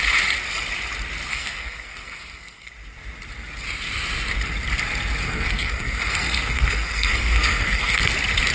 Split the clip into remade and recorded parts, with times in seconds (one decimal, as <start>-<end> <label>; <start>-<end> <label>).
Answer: 0.0-1.3 recorded; 1.3-2.7 remade; 2.7-5.2 recorded; 5.2-8.0 remade; 8.0-8.5 recorded